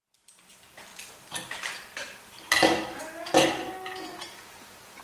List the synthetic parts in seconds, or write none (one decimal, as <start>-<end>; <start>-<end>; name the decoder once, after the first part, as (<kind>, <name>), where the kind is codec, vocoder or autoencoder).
3.9-5.0 (vocoder, Vocos)